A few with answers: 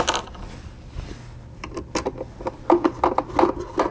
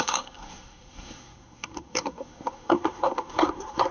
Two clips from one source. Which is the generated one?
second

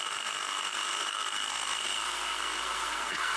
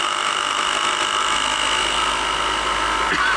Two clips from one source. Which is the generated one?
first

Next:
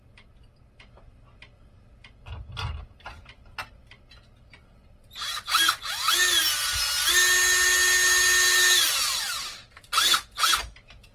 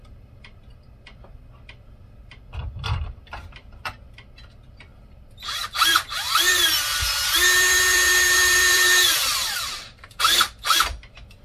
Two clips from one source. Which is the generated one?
second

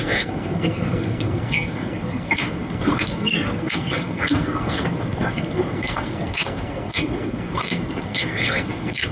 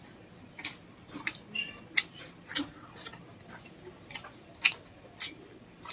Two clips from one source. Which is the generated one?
first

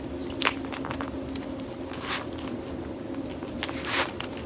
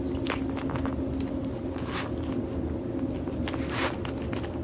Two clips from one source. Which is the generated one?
first